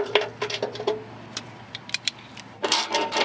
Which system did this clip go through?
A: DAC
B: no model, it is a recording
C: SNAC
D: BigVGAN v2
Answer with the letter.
D